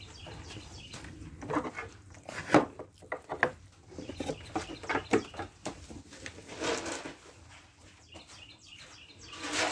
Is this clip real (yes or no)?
yes